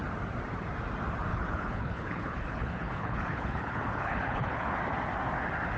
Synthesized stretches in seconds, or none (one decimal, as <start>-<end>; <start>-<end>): 1.3-4.8